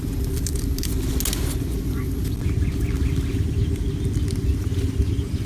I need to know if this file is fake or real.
real